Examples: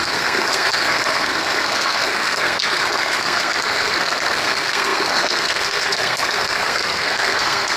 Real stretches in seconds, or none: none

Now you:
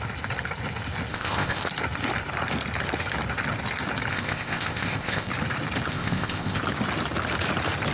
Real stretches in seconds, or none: 0.0-1.1; 1.7-4.1; 5.3-5.9; 6.6-7.9

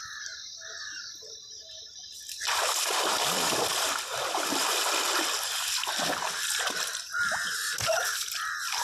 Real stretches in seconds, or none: 0.0-8.8

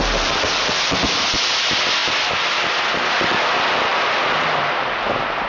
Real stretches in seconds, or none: 0.0-2.0; 3.1-5.5